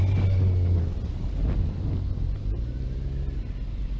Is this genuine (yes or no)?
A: yes